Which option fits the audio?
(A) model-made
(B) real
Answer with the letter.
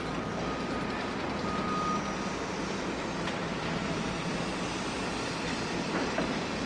B